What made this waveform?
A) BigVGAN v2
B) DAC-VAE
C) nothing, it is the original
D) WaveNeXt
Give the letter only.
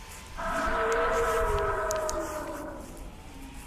C